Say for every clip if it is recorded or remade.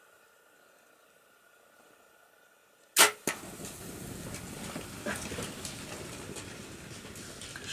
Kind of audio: recorded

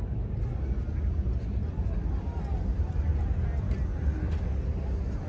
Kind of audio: recorded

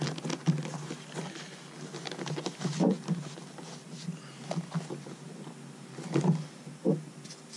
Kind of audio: recorded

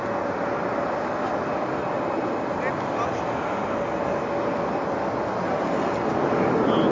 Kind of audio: recorded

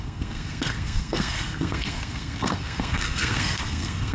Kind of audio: remade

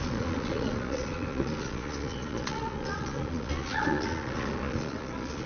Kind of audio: remade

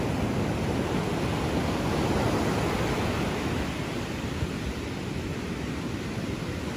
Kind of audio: recorded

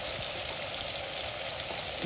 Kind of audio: recorded